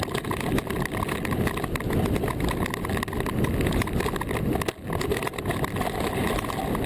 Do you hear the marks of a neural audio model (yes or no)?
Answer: no